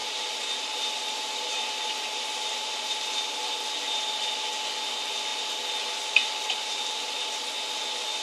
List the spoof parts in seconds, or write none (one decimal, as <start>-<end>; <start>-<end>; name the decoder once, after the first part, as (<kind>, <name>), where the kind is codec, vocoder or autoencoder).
0.0-3.1 (vocoder, BigVGAN v2)